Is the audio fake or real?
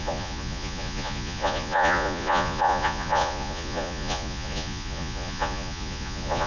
fake